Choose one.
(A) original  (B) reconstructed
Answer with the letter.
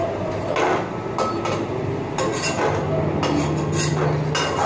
A